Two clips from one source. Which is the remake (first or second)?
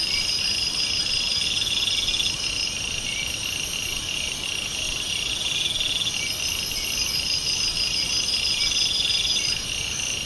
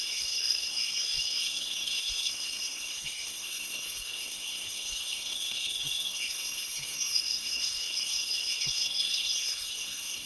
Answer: second